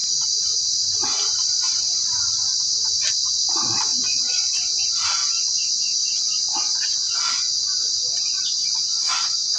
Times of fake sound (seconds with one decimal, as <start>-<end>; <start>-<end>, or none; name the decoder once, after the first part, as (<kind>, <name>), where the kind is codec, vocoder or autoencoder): 0.0-3.9 (vocoder, BigVGAN v2); 4.8-5.2; 9.1-9.6

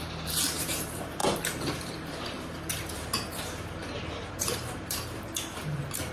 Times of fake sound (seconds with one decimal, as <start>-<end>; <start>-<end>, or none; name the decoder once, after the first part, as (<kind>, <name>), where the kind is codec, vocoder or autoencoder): 0.0-6.1 (vocoder, BigVGAN v2)

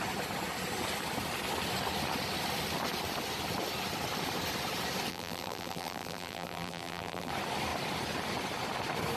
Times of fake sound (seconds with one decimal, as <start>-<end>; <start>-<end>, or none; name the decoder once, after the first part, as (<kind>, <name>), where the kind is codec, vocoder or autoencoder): 5.1-7.3 (vocoder, BigVGAN v2)

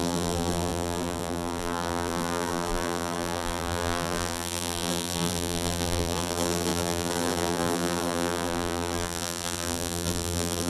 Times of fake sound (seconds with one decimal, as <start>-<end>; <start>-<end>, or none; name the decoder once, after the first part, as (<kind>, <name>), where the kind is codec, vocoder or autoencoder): 0.0-10.7 (vocoder, BigVGAN v2)

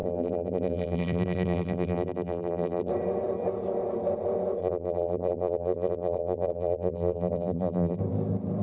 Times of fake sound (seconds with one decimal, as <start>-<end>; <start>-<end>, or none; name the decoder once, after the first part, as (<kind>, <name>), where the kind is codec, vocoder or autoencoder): 0.0-2.9 (vocoder, BigVGAN v2); 4.6-8.0

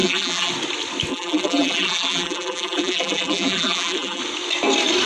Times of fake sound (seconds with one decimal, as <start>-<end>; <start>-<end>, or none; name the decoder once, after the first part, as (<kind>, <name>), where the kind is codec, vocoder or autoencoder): 0.0-0.5 (vocoder, BigVGAN v2); 1.1-4.2

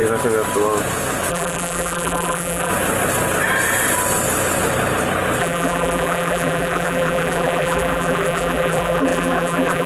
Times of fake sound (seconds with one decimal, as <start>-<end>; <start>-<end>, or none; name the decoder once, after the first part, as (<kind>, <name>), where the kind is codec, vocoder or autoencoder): 1.3-2.7 (vocoder, BigVGAN v2); 5.4-9.9